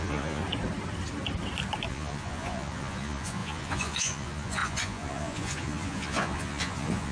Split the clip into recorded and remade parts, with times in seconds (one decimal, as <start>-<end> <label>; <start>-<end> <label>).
0.0-0.4 remade; 0.4-1.9 recorded; 1.9-7.1 remade